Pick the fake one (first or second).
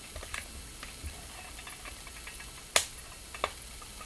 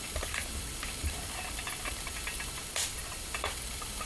second